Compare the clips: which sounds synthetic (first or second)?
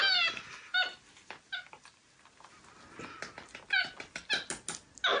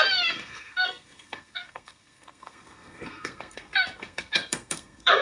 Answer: second